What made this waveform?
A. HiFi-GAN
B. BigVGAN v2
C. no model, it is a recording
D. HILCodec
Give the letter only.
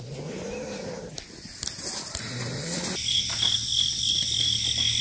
C